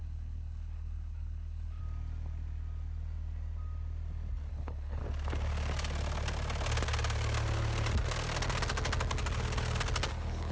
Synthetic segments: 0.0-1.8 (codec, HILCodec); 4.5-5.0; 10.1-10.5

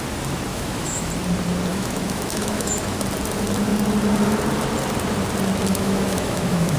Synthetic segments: 0.5-1.1 (autoencoder, DAC-VAE); 1.7-3.0; 5.7-6.8

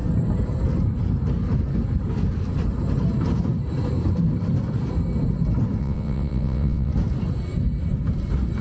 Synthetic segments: 5.8-6.9 (vocoder, WaveNeXt)